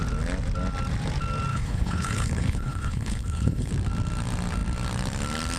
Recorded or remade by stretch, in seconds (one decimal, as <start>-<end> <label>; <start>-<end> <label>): 0.0-1.5 recorded; 1.5-3.7 remade; 3.7-5.6 recorded